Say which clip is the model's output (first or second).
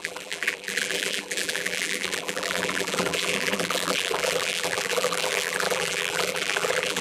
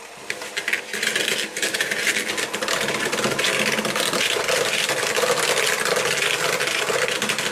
first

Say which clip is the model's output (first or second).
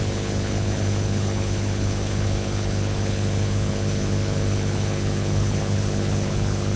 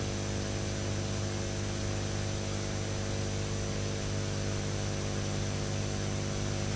first